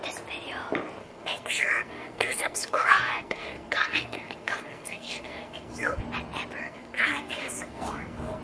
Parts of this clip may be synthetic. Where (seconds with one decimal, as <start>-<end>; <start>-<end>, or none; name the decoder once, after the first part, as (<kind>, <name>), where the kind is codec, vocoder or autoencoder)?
1.0-6.0 (codec, SNAC); 6.6-8.4